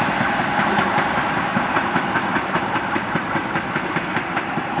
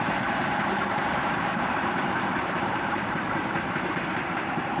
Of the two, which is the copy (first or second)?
second